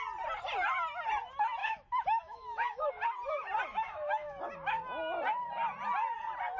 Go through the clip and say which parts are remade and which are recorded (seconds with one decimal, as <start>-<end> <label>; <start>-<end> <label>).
0.0-1.6 recorded; 1.6-2.9 remade; 2.9-3.7 recorded; 3.7-4.4 remade; 4.4-6.6 recorded